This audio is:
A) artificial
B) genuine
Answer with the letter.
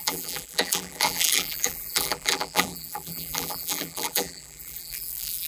A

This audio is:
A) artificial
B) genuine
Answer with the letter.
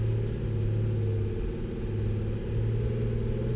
B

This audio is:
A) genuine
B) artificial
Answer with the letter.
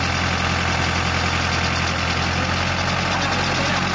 A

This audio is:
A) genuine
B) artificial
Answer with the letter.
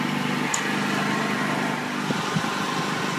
A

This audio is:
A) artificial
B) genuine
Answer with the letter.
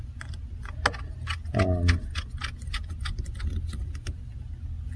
B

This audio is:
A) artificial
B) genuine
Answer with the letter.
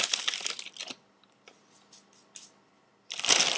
B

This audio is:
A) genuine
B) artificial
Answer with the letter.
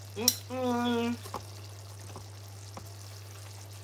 A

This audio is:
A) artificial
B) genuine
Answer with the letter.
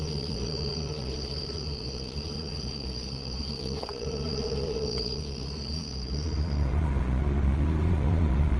A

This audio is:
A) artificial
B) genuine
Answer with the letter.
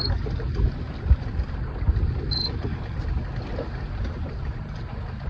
B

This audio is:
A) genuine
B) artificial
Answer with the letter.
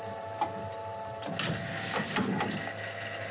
A